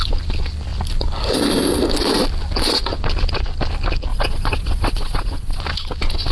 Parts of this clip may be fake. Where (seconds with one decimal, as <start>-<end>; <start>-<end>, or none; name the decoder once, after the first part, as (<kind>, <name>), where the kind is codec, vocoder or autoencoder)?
4.1-5.6 (vocoder, Vocos)